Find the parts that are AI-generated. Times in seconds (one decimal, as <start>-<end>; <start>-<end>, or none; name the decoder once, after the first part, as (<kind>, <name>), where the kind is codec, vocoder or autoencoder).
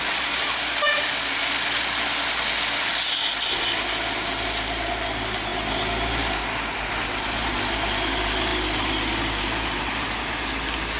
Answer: none